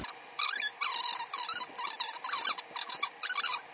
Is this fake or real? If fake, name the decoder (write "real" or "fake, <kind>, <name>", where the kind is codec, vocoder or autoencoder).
real